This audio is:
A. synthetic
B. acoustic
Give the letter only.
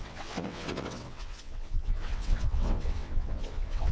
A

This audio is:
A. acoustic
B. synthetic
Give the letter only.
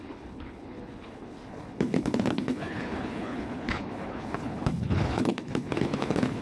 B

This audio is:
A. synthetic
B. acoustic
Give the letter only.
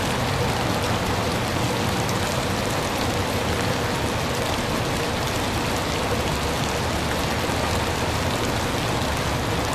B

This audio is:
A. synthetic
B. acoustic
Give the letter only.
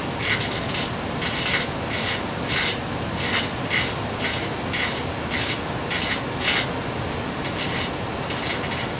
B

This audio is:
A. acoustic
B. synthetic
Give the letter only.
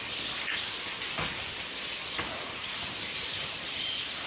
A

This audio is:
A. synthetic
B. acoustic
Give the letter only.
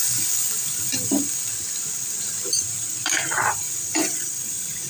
A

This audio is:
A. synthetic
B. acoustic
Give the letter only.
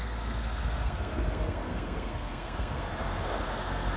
A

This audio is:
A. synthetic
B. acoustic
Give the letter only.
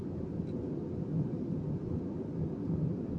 B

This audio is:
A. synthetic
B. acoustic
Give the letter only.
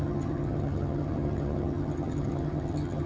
A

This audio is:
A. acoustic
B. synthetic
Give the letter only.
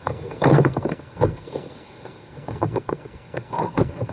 B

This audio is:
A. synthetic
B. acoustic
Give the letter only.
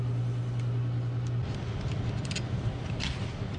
B